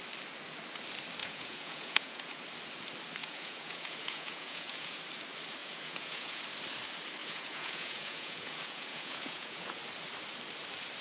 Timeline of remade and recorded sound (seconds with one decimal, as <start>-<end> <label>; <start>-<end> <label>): 0.0-1.2 recorded; 1.2-2.4 remade; 2.4-3.2 recorded; 3.2-5.0 remade; 5.0-5.6 recorded; 5.6-6.4 remade; 6.4-7.2 recorded; 7.2-9.8 remade; 9.8-11.0 recorded